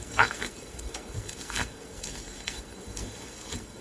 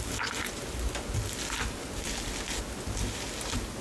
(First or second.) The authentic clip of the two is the second